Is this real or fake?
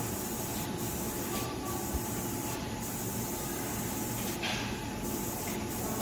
real